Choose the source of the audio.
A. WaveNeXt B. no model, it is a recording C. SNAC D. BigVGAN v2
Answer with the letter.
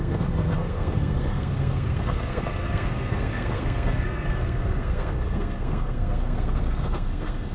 C